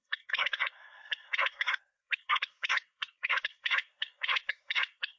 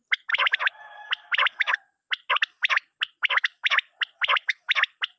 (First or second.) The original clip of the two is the second